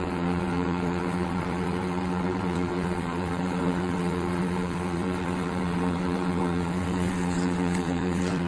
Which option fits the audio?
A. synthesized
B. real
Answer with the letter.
A